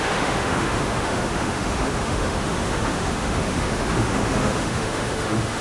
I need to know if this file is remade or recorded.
remade